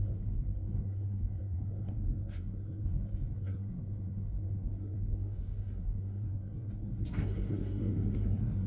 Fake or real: fake